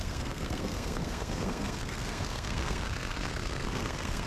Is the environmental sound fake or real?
fake